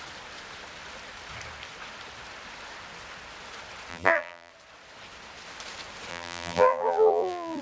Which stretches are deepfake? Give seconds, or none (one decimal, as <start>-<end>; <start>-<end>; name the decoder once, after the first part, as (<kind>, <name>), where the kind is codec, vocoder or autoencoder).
3.9-4.5 (vocoder, BigVGAN v2); 6.1-7.6

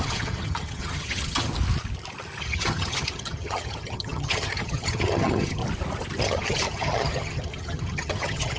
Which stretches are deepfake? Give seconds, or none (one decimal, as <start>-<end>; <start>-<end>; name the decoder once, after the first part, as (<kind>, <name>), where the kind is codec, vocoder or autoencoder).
0.0-1.5 (vocoder, HiFi-GAN); 2.4-5.6; 6.2-8.6